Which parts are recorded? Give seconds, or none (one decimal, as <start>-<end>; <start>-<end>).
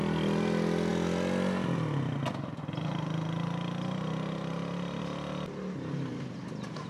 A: 0.0-6.9